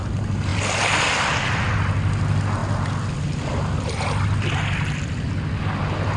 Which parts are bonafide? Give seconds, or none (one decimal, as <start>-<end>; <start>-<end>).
0.0-6.2